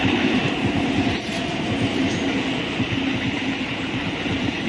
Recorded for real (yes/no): no